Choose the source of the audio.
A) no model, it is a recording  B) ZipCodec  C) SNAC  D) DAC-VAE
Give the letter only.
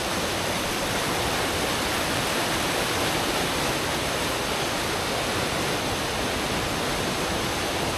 A